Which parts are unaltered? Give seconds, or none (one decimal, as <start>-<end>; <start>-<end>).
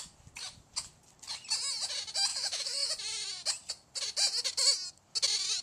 0.0-2.3; 2.9-5.6